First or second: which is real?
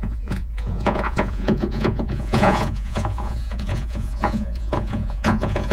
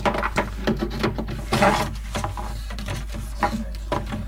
second